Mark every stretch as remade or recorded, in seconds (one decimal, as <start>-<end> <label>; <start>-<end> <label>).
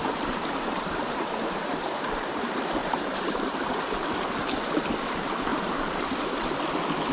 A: 0.0-2.2 remade; 2.2-2.8 recorded; 2.8-3.6 remade; 3.6-5.5 recorded; 5.5-6.2 remade; 6.2-7.1 recorded